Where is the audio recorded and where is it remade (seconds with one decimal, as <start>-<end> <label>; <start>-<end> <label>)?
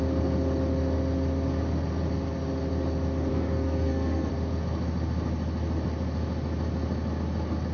0.0-3.3 recorded; 3.3-4.3 remade; 4.3-7.7 recorded